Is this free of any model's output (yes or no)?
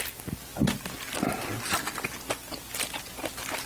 yes